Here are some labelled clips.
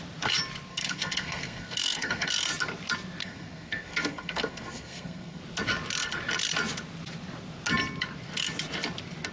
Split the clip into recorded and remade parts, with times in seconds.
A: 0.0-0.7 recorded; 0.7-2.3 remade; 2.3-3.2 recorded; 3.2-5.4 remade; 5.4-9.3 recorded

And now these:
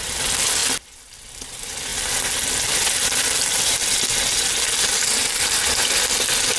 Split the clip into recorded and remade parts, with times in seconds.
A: 0.0-6.6 recorded